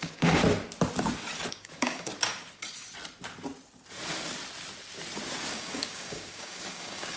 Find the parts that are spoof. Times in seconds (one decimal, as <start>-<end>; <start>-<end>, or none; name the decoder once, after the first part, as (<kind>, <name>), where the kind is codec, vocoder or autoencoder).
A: 0.0-0.4 (codec, DAC); 1.5-2.1; 5.5-7.2